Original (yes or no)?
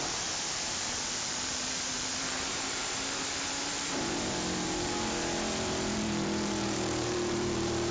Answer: no